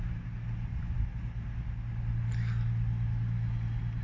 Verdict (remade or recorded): recorded